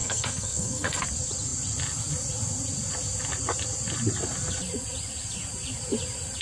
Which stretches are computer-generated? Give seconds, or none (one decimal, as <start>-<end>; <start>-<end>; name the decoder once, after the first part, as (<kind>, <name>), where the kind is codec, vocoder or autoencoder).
0.0-1.0 (codec, SNAC)